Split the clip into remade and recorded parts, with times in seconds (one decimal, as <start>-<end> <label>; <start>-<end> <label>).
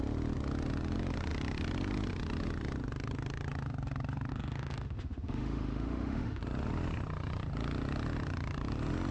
0.0-4.3 recorded; 4.3-6.4 remade; 6.4-9.1 recorded